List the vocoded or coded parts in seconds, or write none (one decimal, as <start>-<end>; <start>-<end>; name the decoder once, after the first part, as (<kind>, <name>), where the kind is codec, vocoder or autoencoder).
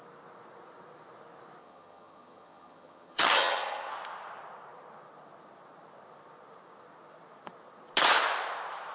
1.6-3.9 (vocoder, HiFi-GAN)